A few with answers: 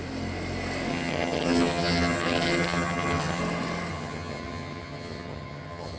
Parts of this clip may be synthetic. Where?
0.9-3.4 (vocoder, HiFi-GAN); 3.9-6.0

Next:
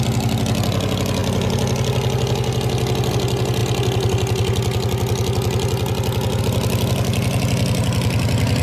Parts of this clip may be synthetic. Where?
none

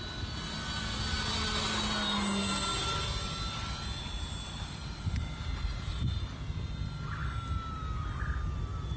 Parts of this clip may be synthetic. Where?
none

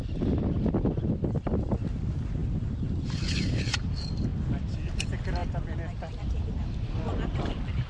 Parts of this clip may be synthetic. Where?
none